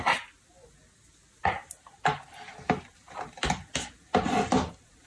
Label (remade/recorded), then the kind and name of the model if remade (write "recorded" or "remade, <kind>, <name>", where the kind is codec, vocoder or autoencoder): recorded